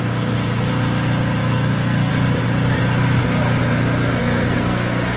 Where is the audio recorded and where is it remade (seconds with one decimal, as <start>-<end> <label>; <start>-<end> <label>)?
0.0-1.4 recorded; 1.4-2.1 remade; 2.1-4.2 recorded; 4.2-5.2 remade